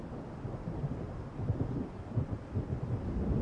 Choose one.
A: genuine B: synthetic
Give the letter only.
A